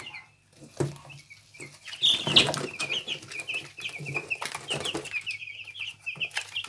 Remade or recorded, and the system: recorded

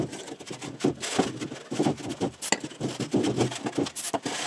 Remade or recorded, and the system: recorded